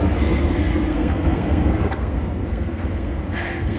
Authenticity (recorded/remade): remade